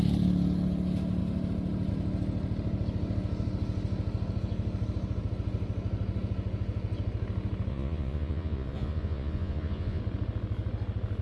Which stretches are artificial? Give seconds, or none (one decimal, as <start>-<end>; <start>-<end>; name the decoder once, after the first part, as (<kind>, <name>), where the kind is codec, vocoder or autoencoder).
7.7-10.0 (vocoder, Vocos)